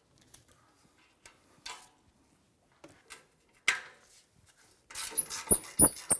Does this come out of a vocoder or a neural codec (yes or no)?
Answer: no